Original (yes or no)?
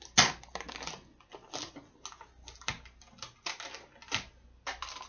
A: yes